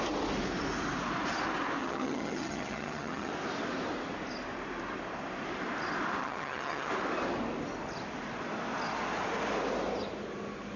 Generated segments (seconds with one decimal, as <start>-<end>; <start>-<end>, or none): 1.8-3.3; 6.2-6.9